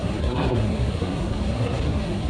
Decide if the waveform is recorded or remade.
remade